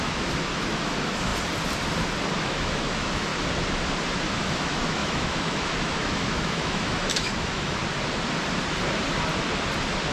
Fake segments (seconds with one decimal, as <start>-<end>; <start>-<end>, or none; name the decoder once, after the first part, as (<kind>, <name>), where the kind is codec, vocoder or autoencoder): 0.0-1.3 (autoencoder, DAC-VAE); 2.4-3.3; 4.3-7.8